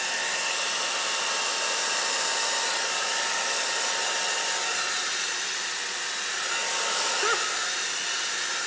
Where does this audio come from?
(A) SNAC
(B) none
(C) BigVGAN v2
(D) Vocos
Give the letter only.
B